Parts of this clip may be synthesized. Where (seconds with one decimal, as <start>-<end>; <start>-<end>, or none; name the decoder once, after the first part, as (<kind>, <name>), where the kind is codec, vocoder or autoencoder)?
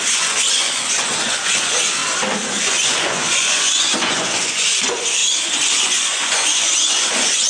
0.0-2.0 (vocoder, Vocos); 2.6-5.2; 5.8-7.5